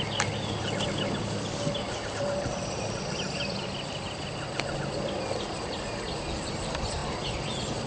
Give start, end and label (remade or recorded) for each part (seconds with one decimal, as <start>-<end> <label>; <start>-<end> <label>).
0.0-7.9 recorded